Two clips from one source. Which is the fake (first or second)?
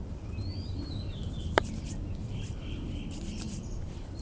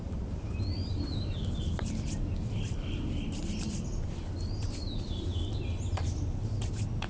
first